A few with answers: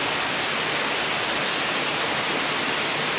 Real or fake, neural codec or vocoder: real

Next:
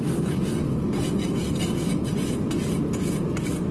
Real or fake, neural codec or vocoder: real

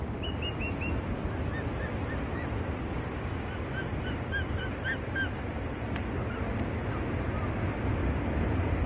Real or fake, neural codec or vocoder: real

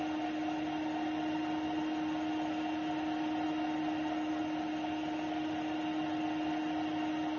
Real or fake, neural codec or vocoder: real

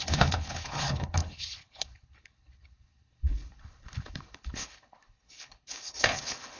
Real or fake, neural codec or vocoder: fake, codec, HILCodec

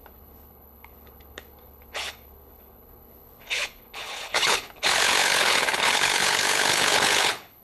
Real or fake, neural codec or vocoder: fake, codec, HILCodec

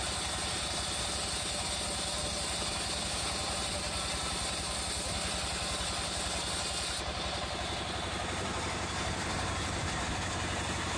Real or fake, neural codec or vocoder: real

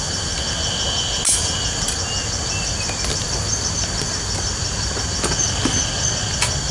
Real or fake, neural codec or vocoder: real